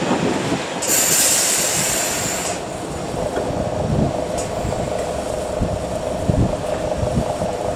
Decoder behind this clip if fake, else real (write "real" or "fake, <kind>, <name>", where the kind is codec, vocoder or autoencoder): real